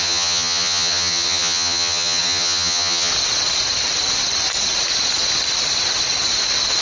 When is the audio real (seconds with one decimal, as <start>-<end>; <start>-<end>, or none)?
3.1-6.8